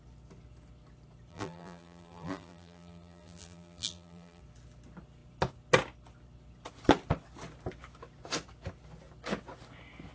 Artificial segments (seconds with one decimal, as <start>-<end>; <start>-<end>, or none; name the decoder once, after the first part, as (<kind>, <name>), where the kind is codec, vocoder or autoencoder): 1.3-4.4 (vocoder, BigVGAN v2)